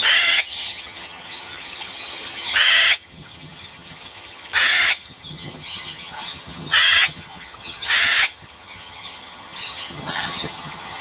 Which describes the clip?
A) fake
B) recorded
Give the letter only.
A